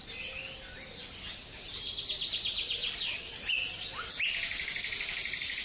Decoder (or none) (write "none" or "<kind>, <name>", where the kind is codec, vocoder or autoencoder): none